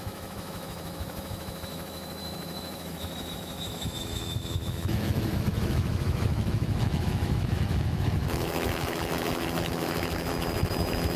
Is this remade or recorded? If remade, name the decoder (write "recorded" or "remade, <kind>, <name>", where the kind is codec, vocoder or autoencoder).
remade, autoencoder, DAC-VAE